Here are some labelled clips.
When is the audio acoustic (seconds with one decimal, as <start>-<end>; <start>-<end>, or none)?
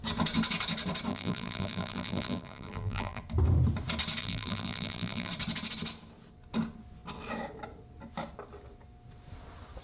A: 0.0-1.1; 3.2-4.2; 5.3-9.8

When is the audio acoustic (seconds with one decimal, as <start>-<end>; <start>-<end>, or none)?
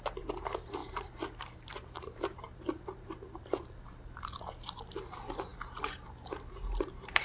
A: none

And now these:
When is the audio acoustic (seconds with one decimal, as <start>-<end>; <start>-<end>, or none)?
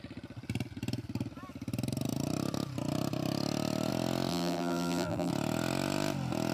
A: 0.0-4.3; 5.3-6.5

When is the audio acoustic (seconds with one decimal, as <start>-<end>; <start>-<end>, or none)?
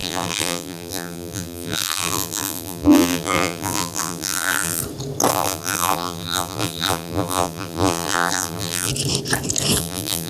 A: 4.8-5.3; 8.9-9.8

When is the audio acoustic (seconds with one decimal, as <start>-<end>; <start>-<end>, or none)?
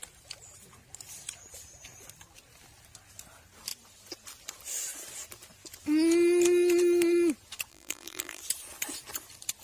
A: 0.0-7.7; 8.4-9.6